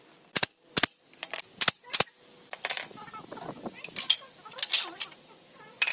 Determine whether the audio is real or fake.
real